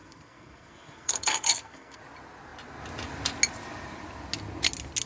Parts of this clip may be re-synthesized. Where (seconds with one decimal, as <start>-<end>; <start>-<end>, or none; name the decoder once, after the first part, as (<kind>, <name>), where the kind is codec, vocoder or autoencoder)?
0.0-2.0 (codec, SNAC)